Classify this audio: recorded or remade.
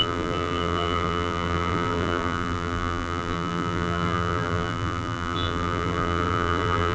remade